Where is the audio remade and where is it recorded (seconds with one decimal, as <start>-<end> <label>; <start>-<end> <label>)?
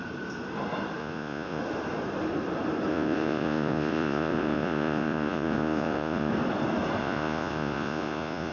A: 0.0-1.0 recorded; 1.0-1.6 remade; 1.6-2.9 recorded; 2.9-6.3 remade; 6.3-7.0 recorded; 7.0-8.5 remade